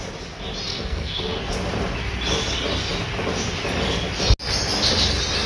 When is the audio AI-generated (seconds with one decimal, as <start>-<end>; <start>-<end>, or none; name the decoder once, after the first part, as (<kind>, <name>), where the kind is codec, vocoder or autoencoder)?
0.7-1.5 (codec, SNAC)